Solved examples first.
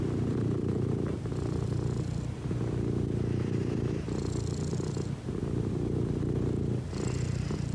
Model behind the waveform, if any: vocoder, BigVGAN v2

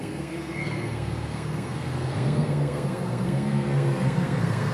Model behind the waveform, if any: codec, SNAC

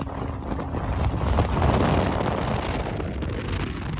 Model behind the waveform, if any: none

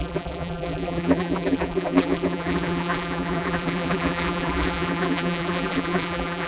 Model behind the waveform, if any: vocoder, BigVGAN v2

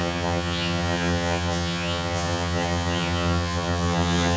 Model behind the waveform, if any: vocoder, HiFi-GAN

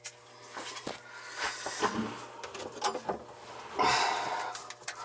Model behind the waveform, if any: none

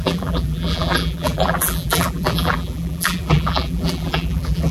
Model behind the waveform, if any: vocoder, BigVGAN v2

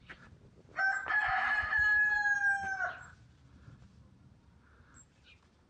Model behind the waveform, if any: vocoder, BigVGAN v2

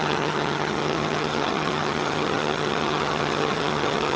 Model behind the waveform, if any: vocoder, HiFi-GAN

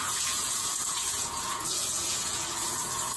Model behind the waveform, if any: vocoder, Vocos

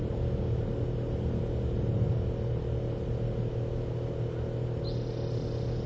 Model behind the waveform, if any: none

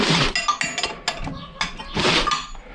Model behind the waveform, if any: none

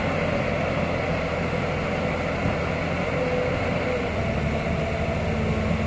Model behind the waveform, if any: none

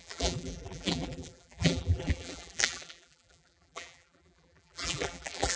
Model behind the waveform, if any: vocoder, BigVGAN v2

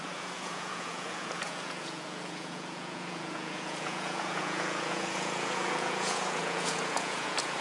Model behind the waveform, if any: vocoder, Vocos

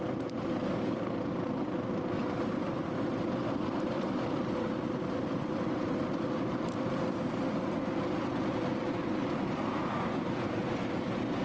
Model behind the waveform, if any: none